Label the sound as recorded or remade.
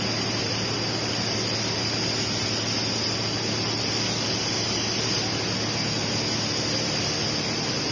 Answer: recorded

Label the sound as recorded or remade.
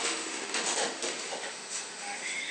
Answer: remade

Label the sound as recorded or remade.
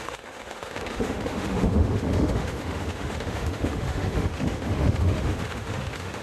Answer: remade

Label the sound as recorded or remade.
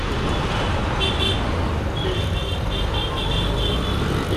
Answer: recorded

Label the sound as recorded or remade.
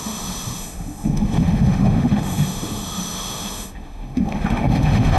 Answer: remade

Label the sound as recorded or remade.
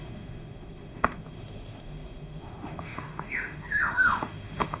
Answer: remade